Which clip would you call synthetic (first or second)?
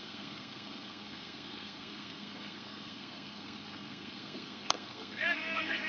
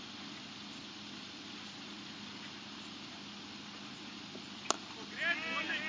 first